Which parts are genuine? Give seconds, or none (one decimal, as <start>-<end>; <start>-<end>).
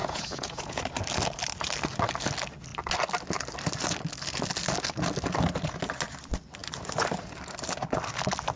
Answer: 0.8-8.6